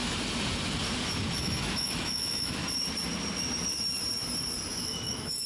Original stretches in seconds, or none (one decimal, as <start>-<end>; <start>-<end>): 0.0-1.4; 2.6-4.7